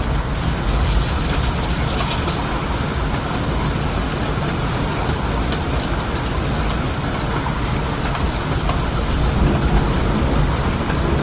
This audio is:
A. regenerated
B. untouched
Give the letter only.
B